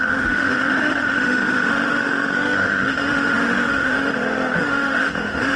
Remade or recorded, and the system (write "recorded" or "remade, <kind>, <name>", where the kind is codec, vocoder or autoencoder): remade, autoencoder, DAC-VAE